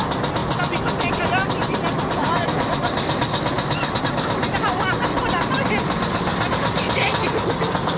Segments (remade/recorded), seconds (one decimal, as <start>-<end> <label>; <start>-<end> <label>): 0.0-8.0 recorded